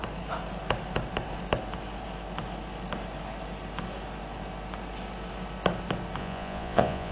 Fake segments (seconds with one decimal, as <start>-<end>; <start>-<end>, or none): 6.2-7.1